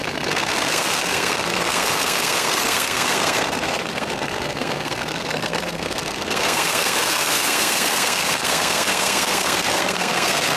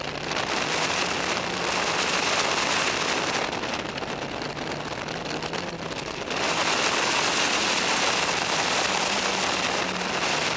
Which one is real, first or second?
second